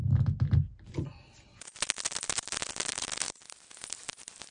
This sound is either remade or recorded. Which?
recorded